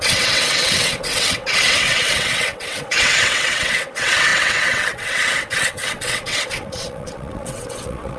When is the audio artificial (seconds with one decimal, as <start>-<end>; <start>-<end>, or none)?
0.0-8.2